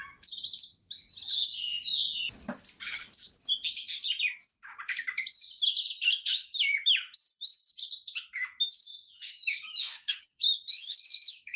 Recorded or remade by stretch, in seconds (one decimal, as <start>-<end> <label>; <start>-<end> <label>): 0.0-5.7 recorded; 5.7-7.7 remade; 7.7-8.8 recorded; 8.8-11.6 remade